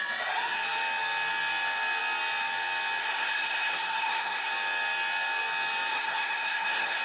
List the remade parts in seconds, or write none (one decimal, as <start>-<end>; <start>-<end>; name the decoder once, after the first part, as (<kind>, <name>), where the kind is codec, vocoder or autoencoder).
3.0-4.5 (codec, SNAC); 5.9-7.0